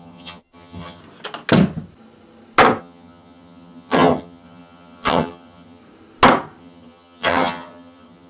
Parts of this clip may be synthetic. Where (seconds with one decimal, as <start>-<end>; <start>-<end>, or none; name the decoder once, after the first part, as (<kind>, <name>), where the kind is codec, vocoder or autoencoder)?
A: 0.0-1.0 (vocoder, HiFi-GAN); 2.8-5.8; 6.6-8.3